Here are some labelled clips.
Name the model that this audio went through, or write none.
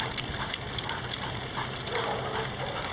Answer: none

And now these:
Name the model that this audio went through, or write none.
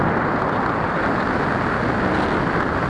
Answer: none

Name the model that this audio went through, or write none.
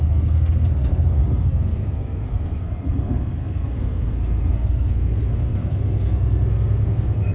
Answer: codec, SNAC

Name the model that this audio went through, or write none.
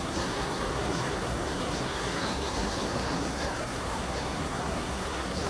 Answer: codec, SNAC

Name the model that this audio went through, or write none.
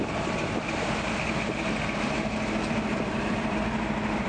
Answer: vocoder, BigVGAN v2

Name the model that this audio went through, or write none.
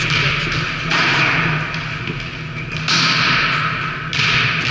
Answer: none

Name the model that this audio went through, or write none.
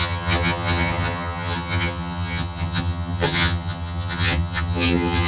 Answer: vocoder, HiFi-GAN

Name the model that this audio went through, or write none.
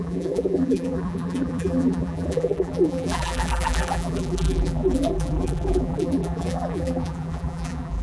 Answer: vocoder, BigVGAN v2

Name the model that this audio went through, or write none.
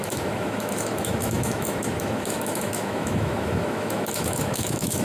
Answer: autoencoder, DAC-VAE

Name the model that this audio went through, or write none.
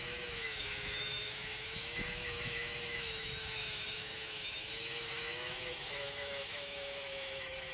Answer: autoencoder, DAC-VAE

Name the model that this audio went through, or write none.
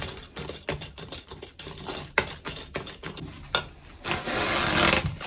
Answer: none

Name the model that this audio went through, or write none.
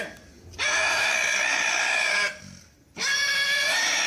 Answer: none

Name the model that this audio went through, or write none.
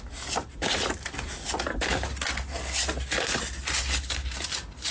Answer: none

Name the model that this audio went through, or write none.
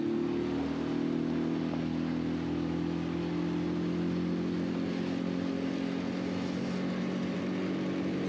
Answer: none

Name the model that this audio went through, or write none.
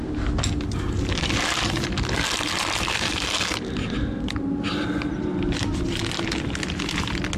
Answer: none